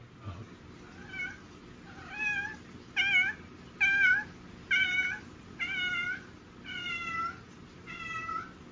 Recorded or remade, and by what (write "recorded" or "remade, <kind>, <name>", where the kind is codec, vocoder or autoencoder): recorded